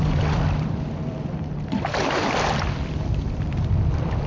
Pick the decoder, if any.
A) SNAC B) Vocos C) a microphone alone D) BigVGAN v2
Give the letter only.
D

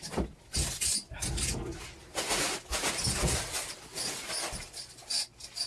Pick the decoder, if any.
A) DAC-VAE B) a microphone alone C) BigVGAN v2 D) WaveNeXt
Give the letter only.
B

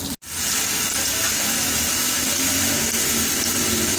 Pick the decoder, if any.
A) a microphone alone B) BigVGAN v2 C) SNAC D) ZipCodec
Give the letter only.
A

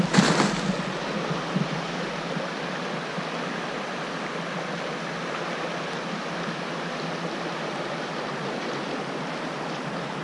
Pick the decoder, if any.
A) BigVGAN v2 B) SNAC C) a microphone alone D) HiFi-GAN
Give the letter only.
C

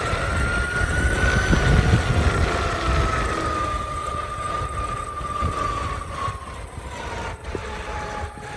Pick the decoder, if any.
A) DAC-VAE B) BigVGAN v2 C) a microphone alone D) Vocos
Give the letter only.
C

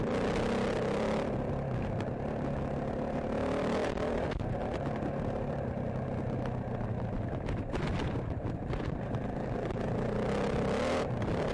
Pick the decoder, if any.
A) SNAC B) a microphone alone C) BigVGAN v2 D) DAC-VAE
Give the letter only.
B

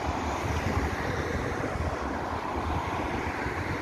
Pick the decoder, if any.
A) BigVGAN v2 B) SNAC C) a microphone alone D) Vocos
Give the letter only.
A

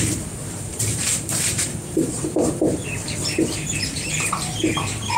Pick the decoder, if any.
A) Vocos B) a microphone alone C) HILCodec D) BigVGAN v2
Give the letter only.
D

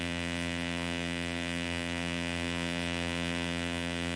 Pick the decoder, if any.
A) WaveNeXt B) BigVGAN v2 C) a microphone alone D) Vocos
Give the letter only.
B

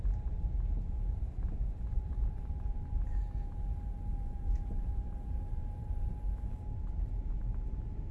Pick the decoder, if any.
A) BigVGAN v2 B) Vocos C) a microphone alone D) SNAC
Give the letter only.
A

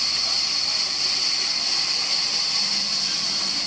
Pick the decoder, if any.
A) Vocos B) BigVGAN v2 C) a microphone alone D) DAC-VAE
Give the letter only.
C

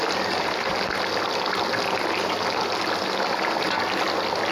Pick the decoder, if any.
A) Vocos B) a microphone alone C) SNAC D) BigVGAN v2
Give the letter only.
B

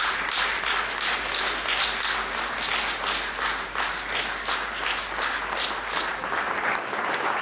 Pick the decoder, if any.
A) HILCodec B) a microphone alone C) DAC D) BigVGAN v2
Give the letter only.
B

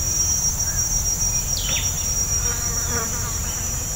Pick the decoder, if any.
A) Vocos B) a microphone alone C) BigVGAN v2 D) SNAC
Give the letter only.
C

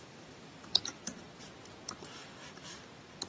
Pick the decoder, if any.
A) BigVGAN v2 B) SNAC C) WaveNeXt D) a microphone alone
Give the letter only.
A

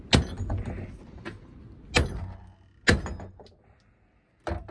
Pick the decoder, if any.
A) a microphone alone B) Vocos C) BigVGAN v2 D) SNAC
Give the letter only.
A